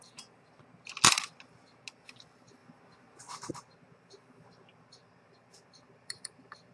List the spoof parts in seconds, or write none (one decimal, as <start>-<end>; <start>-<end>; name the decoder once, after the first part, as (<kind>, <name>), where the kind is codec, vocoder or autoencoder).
4.7-6.7 (vocoder, BigVGAN v2)